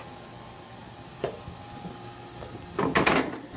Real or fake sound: real